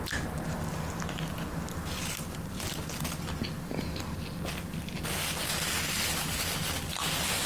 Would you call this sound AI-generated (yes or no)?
no